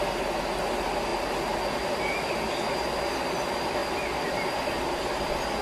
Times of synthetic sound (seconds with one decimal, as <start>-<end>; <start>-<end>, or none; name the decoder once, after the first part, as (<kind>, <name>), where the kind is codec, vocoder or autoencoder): none